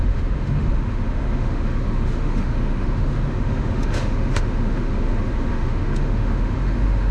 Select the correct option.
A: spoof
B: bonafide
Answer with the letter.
A